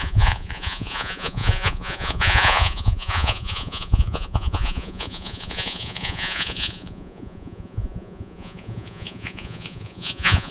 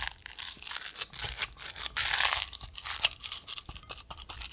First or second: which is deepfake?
first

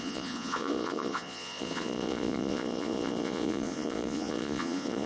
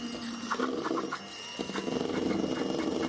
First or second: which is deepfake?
first